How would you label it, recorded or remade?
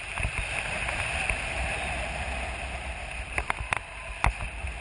recorded